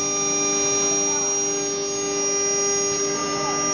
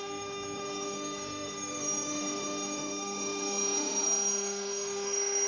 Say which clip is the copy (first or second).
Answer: second